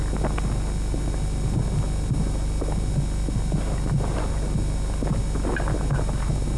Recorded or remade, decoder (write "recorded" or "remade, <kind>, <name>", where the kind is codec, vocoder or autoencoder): recorded